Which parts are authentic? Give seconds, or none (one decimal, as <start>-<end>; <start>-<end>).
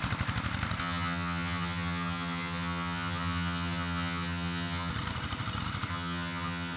0.0-0.8; 4.9-5.9